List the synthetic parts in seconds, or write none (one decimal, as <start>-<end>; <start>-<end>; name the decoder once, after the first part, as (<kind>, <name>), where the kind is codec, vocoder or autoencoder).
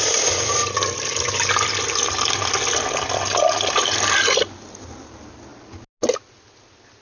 none